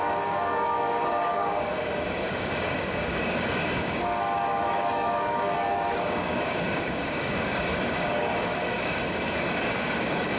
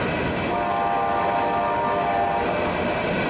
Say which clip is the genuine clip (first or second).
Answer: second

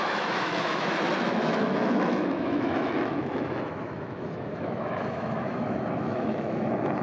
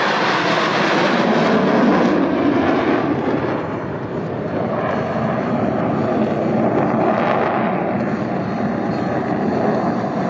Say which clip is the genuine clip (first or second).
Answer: second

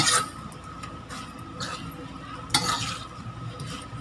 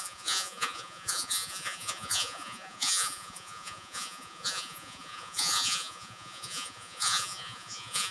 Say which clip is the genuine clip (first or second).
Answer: first